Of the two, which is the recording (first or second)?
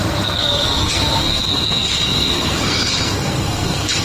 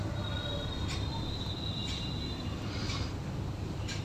second